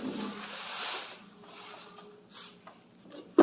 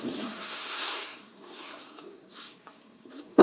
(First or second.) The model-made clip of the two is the second